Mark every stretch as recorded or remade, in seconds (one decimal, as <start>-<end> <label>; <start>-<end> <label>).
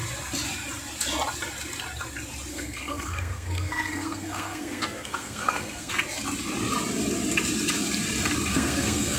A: 0.0-2.5 recorded; 2.5-5.9 remade; 5.9-8.5 recorded; 8.5-9.2 remade